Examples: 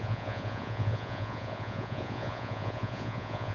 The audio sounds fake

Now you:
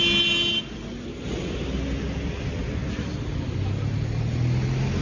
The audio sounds real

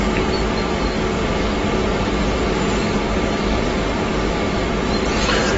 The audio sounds real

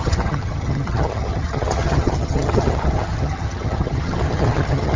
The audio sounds fake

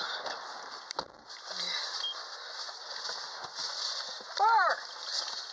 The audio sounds real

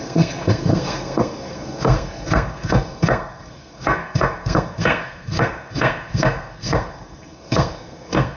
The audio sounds fake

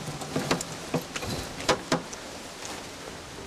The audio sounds real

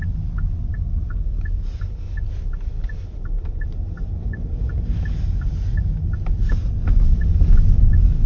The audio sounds real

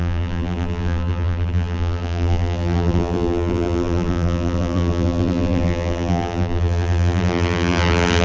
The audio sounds fake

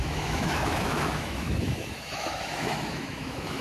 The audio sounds fake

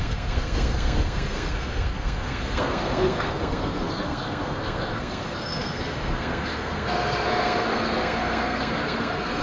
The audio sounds fake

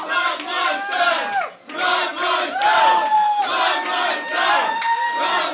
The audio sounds real